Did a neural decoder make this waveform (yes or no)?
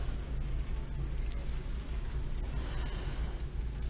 no